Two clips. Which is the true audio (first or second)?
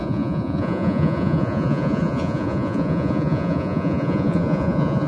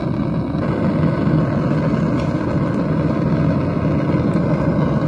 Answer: second